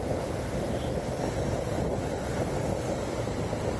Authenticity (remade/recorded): recorded